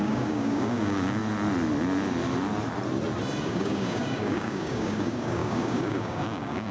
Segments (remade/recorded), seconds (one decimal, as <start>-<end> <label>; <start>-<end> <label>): 0.0-1.2 remade; 1.2-3.4 recorded; 3.4-6.7 remade